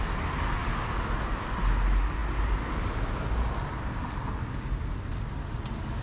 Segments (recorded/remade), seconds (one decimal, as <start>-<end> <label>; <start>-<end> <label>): 0.0-6.0 recorded